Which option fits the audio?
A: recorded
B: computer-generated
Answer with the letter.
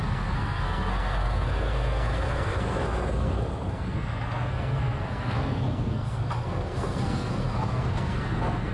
B